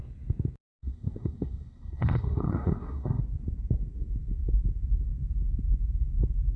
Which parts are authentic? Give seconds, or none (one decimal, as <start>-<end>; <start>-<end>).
0.0-0.6; 3.2-6.6

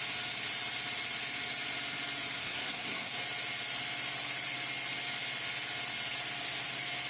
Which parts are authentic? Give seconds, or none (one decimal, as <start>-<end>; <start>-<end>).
0.0-2.4; 3.1-7.1